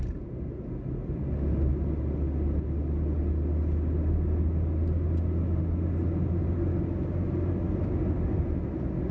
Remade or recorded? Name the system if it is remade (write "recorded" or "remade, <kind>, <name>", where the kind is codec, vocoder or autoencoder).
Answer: recorded